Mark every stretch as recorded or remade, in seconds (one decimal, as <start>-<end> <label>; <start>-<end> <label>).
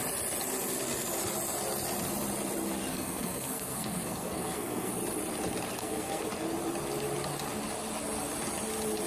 0.0-2.9 recorded; 2.9-4.9 remade; 4.9-5.8 recorded; 5.8-6.3 remade; 6.3-9.1 recorded